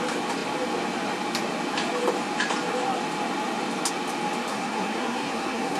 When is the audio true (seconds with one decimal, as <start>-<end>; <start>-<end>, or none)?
0.0-4.5